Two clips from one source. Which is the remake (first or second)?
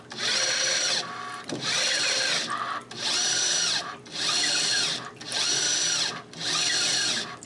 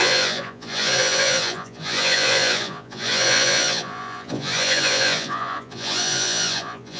second